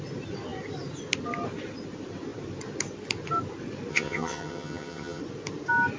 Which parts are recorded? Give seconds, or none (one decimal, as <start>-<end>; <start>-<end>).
0.0-3.9; 5.2-6.0